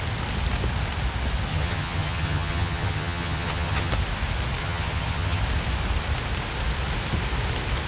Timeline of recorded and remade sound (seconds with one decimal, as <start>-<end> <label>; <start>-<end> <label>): 0.0-1.5 recorded; 1.5-3.9 remade; 3.9-4.6 recorded; 4.6-5.4 remade; 5.4-7.9 recorded